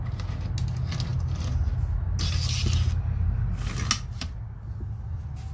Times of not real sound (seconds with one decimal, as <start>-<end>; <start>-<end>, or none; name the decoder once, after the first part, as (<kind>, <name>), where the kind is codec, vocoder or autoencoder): none